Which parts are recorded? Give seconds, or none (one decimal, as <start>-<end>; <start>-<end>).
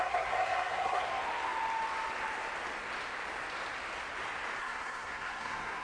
1.1-4.6